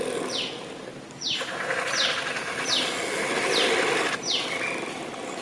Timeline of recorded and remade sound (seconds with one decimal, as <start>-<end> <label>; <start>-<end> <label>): 0.0-5.4 recorded